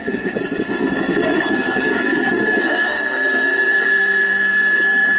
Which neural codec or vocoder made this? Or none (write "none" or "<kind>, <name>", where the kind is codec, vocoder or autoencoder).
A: codec, SNAC